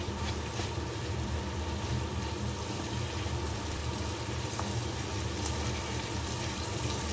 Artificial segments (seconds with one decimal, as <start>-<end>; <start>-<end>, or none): 0.0-3.8; 5.6-7.1

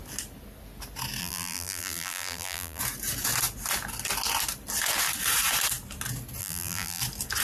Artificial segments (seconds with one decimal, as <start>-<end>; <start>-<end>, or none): 1.2-2.8; 6.4-7.0

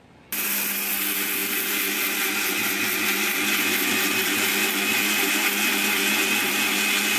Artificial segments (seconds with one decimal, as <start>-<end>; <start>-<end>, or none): none

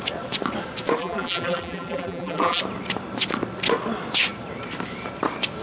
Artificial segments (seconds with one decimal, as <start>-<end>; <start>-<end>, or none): 1.0-2.6

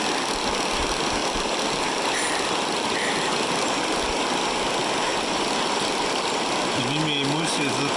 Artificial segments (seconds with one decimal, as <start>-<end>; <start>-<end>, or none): 1.2-4.2; 5.1-6.8

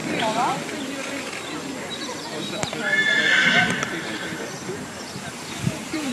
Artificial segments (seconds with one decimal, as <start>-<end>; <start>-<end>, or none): 3.7-6.1

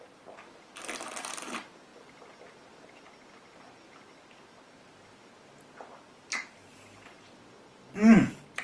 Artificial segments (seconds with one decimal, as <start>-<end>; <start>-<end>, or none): none